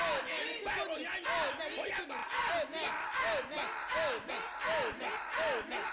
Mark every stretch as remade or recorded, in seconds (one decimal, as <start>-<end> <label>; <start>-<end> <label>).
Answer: 0.0-5.9 recorded